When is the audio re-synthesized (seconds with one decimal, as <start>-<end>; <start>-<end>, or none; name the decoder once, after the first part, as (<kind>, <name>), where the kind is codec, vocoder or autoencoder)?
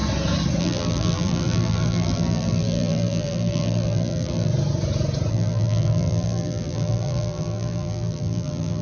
0.6-4.5 (vocoder, BigVGAN v2); 5.3-8.8